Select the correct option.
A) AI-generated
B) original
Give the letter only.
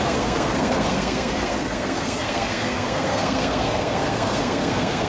A